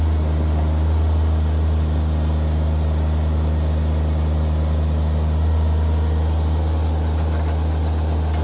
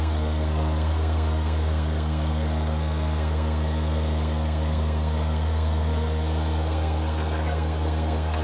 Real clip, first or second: first